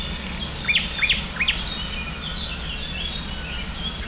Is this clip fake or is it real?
real